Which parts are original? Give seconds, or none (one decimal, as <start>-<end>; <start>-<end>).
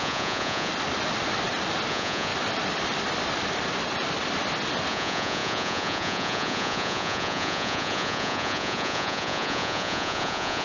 0.7-1.9; 2.3-4.9